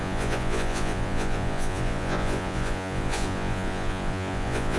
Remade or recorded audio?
remade